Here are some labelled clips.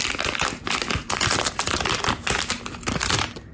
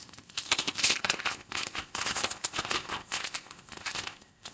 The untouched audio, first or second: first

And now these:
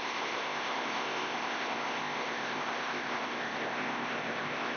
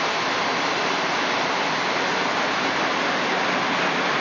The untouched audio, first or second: second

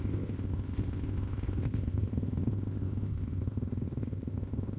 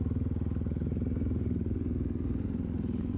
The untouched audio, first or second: second